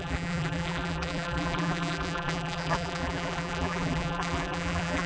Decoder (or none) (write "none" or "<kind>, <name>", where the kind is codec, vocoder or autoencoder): vocoder, BigVGAN v2